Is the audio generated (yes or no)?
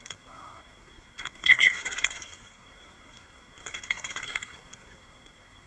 yes